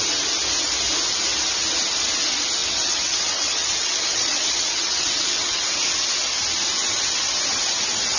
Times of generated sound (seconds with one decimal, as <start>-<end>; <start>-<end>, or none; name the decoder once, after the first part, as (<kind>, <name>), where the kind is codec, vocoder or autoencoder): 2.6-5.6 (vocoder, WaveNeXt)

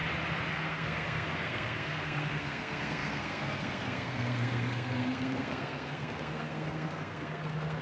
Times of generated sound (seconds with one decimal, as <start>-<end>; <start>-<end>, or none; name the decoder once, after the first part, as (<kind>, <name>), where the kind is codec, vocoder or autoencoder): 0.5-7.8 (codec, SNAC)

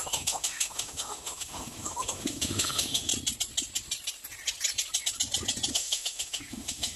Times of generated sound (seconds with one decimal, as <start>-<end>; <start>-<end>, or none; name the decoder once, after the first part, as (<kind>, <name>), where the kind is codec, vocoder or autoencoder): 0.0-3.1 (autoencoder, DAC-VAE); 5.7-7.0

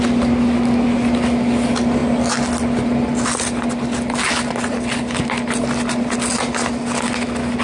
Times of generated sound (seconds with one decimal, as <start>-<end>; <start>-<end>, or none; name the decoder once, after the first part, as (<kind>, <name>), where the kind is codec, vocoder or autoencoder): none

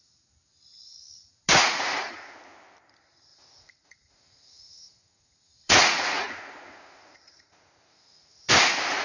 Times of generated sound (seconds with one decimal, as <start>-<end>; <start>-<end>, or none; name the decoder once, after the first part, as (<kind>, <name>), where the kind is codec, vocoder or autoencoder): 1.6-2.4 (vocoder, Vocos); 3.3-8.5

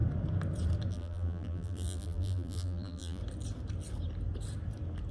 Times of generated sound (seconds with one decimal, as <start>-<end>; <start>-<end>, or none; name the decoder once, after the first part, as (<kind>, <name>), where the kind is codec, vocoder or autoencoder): 0.9-3.2 (vocoder, BigVGAN v2)

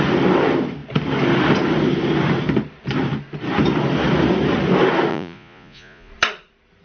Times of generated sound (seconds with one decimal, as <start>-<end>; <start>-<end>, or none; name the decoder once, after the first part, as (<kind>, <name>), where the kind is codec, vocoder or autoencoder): 5.1-6.1 (vocoder, Vocos)